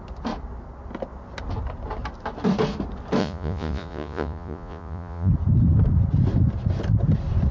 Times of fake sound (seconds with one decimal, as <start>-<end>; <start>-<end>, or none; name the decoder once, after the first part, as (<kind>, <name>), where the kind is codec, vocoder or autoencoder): 3.2-5.3 (vocoder, Vocos)